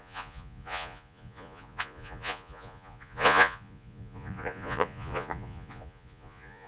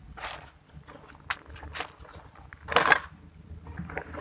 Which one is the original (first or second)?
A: second